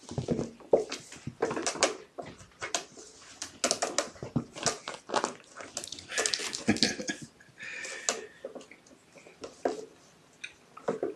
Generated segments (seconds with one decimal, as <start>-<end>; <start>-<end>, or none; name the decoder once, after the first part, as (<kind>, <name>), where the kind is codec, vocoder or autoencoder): 1.6-2.7 (vocoder, BigVGAN v2)